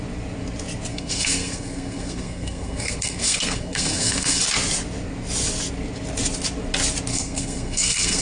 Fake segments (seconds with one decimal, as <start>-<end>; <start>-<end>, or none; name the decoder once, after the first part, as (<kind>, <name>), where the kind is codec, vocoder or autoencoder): 0.9-4.4 (codec, SNAC); 7.1-8.2